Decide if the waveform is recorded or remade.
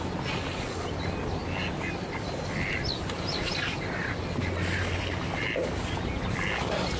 recorded